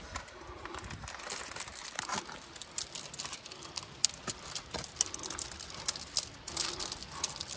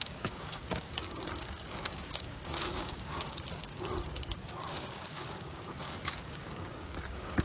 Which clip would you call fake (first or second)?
second